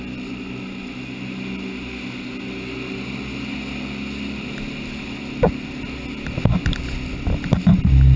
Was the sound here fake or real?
real